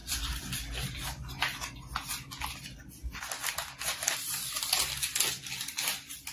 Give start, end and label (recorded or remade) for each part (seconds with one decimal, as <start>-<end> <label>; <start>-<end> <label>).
0.0-0.6 remade; 0.6-3.0 recorded; 3.0-4.8 remade; 4.8-6.3 recorded